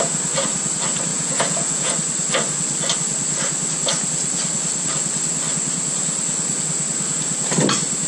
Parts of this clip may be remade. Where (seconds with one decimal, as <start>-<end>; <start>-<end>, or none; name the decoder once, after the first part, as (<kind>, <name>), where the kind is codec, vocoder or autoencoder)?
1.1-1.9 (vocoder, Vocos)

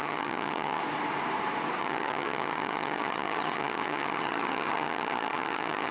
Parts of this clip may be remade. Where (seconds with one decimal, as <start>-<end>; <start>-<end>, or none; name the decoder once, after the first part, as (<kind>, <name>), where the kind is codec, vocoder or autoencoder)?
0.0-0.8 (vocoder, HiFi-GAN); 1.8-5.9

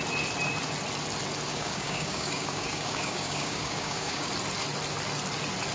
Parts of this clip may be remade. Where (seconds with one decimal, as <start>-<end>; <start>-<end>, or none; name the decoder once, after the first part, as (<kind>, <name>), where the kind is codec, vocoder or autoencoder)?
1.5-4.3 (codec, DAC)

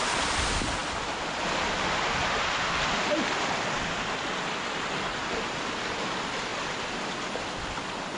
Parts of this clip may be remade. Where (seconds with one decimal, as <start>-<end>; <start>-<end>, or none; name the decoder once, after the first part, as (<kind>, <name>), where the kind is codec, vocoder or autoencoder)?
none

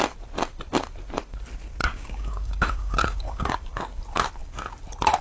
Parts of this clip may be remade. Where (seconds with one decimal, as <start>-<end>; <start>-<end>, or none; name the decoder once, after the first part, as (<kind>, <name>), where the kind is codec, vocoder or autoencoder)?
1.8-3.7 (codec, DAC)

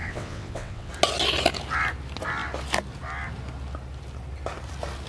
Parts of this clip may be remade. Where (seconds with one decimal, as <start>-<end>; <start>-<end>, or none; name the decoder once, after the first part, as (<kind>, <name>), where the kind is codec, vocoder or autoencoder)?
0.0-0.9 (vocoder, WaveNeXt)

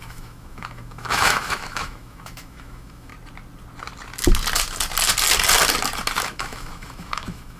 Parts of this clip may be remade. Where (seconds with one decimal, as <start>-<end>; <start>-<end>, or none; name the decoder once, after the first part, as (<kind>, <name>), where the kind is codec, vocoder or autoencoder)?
0.0-3.1 (autoencoder, DAC-VAE); 6.2-7.6